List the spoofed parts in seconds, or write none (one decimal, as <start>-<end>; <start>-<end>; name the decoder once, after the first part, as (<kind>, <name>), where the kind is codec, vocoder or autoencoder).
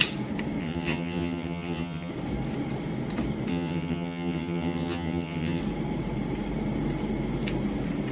0.6-2.1 (vocoder, HiFi-GAN); 3.5-5.6